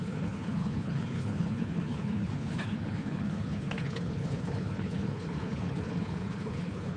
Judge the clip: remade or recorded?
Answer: remade